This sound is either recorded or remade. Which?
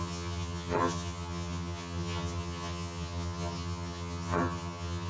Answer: remade